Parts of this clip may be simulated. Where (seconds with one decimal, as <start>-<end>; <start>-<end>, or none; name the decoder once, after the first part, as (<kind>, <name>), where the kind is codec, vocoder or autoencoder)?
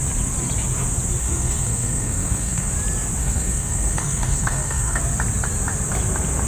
1.2-2.7 (codec, SNAC); 3.2-5.0